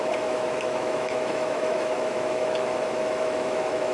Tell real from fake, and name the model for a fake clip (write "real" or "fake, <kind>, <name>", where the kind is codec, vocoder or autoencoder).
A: fake, autoencoder, DAC-VAE